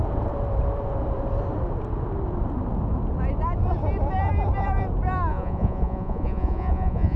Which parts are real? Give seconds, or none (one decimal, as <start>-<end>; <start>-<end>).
0.0-5.3